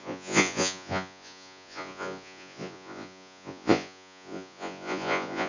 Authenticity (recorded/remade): remade